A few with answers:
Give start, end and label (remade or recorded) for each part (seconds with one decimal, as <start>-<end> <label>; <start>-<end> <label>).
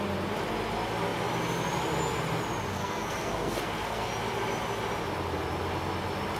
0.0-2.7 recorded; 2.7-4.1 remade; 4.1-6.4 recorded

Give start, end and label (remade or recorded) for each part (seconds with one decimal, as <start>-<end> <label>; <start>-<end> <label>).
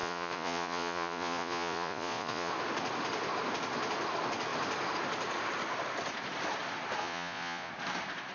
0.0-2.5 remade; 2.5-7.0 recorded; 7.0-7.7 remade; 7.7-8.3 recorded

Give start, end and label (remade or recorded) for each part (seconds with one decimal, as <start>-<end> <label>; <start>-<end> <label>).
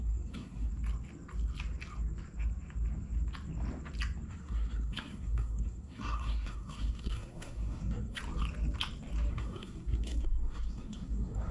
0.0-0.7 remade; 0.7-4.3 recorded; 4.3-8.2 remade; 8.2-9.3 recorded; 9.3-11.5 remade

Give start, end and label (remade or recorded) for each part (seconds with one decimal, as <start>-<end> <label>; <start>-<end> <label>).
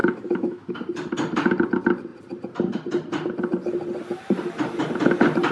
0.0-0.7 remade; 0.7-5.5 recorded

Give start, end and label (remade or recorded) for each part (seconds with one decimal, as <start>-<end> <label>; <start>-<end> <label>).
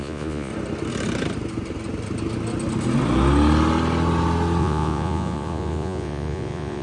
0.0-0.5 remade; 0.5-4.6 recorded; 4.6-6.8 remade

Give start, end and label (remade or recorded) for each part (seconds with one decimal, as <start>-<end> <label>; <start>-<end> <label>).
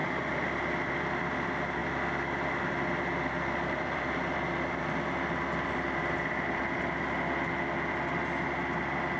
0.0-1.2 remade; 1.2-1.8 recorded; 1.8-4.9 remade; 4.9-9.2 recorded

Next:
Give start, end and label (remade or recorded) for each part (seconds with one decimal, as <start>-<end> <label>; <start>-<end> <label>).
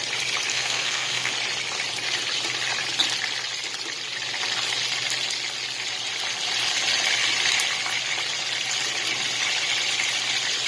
0.0-0.5 recorded; 0.5-1.3 remade; 1.3-10.7 recorded